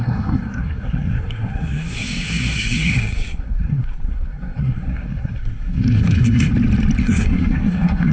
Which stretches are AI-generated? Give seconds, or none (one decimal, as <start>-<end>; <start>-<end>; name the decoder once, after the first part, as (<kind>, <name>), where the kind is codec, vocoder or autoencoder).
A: 0.0-6.5 (codec, SNAC); 7.0-8.1